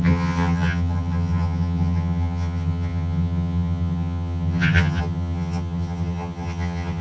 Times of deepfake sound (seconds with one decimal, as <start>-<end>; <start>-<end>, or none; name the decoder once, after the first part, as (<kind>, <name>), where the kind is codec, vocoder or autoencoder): 0.0-7.0 (vocoder, HiFi-GAN)

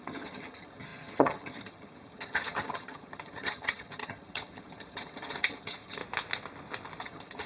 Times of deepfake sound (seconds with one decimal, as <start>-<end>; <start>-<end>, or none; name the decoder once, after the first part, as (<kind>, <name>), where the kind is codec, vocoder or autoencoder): 0.0-6.0 (vocoder, HiFi-GAN); 7.0-7.5

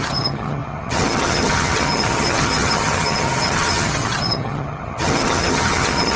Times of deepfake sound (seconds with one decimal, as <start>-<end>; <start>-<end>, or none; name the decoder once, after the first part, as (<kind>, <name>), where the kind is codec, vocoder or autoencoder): 0.0-6.2 (vocoder, HiFi-GAN)

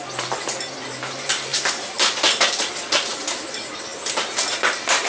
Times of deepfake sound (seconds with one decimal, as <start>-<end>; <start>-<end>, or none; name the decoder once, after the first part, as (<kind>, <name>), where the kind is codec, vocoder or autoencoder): none

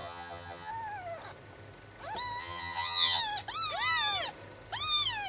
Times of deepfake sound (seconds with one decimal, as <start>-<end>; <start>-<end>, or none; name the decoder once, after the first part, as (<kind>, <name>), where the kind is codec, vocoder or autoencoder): 0.0-0.7 (vocoder, HiFi-GAN); 2.4-3.2

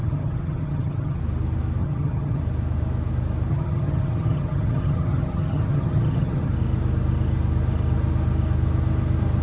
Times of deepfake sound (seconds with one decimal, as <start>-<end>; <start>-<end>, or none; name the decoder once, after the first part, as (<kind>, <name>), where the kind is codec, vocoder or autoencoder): 0.0-1.2 (vocoder, HiFi-GAN); 1.8-2.4; 3.5-6.5